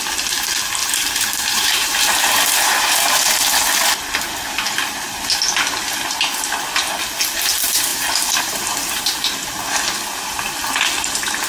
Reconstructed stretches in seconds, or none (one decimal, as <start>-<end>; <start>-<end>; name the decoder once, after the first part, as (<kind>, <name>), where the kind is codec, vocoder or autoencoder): 0.8-3.3 (vocoder, BigVGAN v2); 7.9-9.0